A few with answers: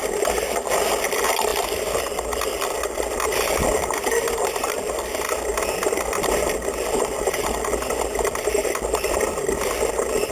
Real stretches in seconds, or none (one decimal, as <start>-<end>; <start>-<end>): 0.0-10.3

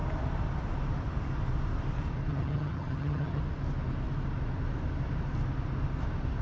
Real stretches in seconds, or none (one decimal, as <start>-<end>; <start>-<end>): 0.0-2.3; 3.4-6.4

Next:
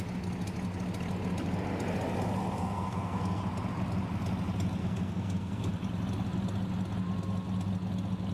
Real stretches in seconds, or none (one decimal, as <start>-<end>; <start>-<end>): 0.0-2.6; 3.4-4.8; 5.7-8.3

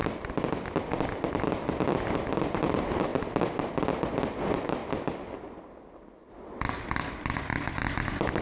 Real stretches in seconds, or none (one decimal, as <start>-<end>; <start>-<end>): 0.0-3.1; 4.1-8.4